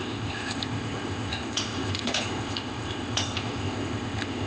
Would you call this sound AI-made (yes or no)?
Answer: yes